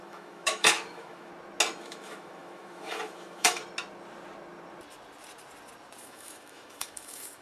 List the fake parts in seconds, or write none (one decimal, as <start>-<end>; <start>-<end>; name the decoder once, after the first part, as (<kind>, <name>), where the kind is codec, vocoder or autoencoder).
0.0-1.3 (autoencoder, DAC-VAE); 1.8-3.6; 6.0-7.4